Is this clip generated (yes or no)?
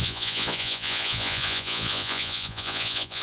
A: yes